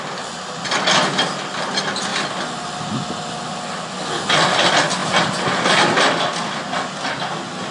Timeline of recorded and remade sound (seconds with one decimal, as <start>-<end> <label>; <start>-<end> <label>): 0.0-7.7 recorded